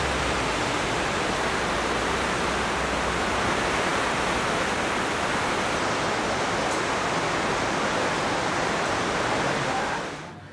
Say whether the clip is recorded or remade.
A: recorded